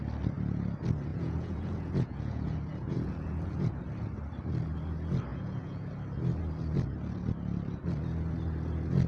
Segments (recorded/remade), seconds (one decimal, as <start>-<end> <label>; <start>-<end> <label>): 0.0-1.1 recorded; 1.1-3.8 remade; 3.8-5.3 recorded; 5.3-5.9 remade; 5.9-9.1 recorded